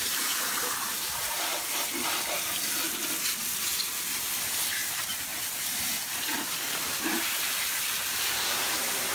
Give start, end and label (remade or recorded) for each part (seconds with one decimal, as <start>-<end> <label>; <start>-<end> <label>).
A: 0.0-1.5 remade; 1.5-4.7 recorded; 4.7-5.3 remade; 5.3-7.0 recorded; 7.0-9.1 remade